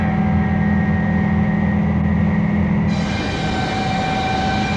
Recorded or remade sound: recorded